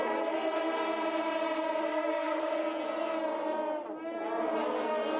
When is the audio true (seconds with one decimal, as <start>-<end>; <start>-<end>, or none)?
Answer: 0.0-1.9; 2.5-5.2